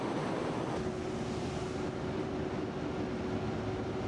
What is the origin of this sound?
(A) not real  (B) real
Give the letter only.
B